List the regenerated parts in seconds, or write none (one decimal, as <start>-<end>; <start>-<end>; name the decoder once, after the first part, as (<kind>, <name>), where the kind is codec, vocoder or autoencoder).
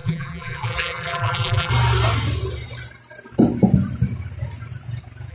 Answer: 0.0-1.7 (vocoder, BigVGAN v2)